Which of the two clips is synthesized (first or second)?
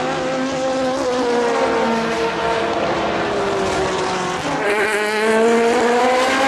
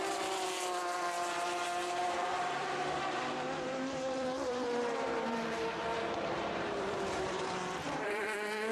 second